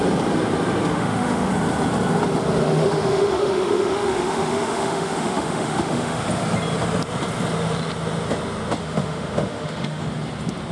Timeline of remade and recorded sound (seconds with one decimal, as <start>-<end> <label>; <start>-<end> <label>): 0.0-0.9 recorded; 0.9-1.5 remade; 1.5-2.6 recorded; 2.6-6.2 remade; 6.2-8.8 recorded; 8.8-10.1 remade; 10.1-10.7 recorded